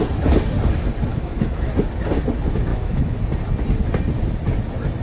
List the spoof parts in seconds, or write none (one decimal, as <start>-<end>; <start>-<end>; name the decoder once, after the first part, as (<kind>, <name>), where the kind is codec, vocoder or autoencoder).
1.1-1.7 (autoencoder, DAC-VAE); 2.7-3.2